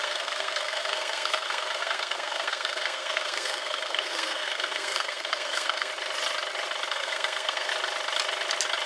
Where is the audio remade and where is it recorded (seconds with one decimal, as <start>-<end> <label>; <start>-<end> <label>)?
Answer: 0.0-5.9 remade; 5.9-6.9 recorded; 6.9-7.7 remade; 7.7-8.9 recorded

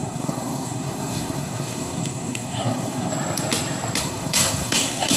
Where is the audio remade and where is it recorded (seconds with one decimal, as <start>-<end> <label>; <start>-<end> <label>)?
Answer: 0.0-3.1 remade; 3.1-4.0 recorded; 4.0-5.2 remade

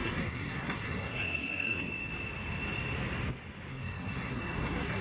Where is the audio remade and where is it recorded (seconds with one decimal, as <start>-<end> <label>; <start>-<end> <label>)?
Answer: 0.0-1.9 remade; 1.9-3.7 recorded; 3.7-5.0 remade

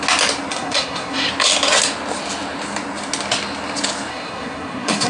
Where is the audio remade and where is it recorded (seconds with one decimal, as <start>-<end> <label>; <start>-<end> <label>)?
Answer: 0.0-0.5 recorded; 0.5-1.3 remade; 1.3-4.1 recorded; 4.1-5.1 remade

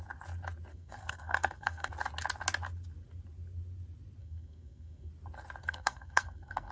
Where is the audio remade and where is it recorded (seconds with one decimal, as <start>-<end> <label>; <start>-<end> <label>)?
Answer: 0.0-0.7 recorded; 0.7-1.9 remade; 1.9-4.2 recorded; 4.2-5.1 remade; 5.1-5.6 recorded; 5.6-6.7 remade

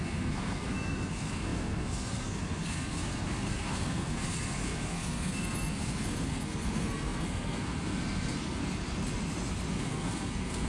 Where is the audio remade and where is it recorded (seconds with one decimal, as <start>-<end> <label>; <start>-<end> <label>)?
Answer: 0.0-8.6 remade; 8.6-9.7 recorded; 9.7-10.7 remade

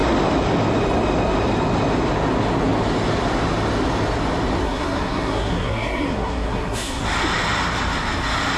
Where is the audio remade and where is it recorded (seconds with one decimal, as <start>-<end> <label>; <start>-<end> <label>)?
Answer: 0.0-4.6 recorded; 4.6-7.0 remade; 7.0-8.6 recorded